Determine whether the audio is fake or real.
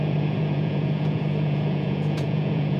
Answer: fake